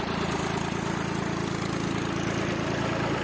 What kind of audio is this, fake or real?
real